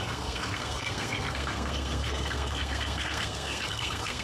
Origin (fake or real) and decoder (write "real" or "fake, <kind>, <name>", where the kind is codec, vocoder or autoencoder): fake, codec, SNAC